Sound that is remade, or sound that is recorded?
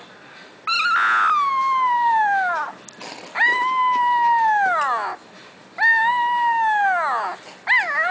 recorded